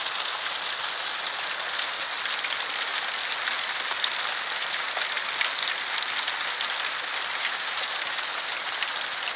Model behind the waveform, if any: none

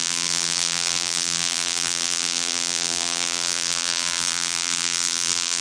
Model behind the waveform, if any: vocoder, BigVGAN v2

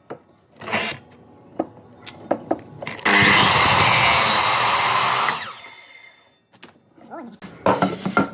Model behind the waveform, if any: none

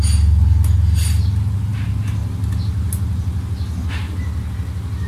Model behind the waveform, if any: none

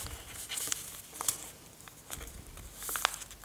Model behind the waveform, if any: none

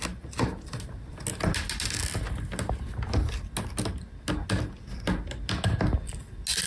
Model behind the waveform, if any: none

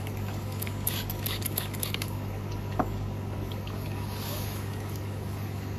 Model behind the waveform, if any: codec, DAC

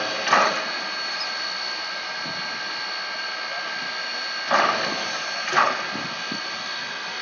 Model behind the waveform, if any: none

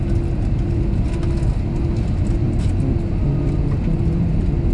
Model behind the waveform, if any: none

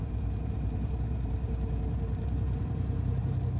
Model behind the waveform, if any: vocoder, BigVGAN v2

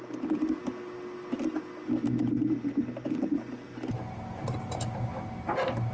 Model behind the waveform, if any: none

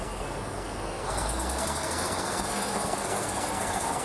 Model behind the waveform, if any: codec, SNAC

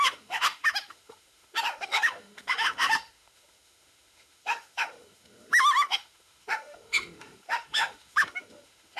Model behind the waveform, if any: autoencoder, DAC-VAE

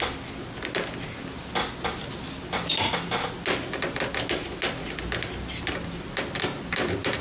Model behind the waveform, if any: none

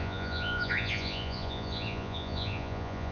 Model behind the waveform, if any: vocoder, Vocos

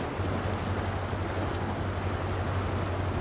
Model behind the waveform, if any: none